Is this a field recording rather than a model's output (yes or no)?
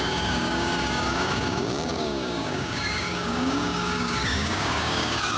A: no